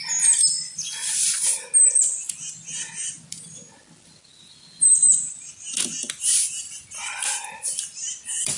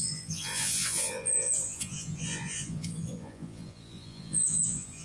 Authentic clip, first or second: first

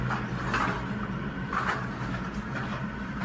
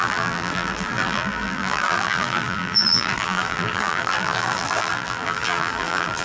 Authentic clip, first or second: first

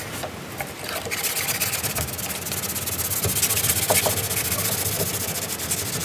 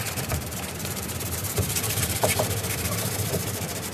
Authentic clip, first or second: first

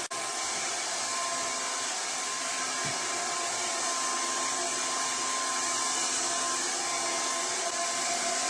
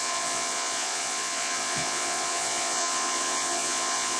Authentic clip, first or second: first